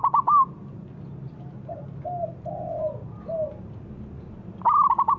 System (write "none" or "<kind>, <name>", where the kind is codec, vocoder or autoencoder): none